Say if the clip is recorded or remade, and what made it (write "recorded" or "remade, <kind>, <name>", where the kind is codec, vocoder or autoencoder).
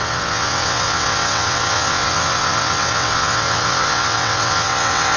remade, vocoder, WaveNeXt